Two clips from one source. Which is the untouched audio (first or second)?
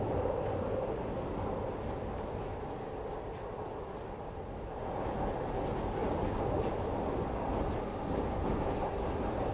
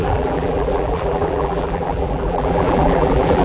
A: first